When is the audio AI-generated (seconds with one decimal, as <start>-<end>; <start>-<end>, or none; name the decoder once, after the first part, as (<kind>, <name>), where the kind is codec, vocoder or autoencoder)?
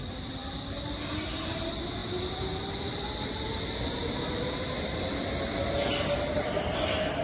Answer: none